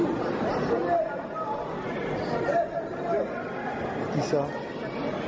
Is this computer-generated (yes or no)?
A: no